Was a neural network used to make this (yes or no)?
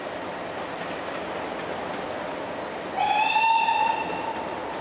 no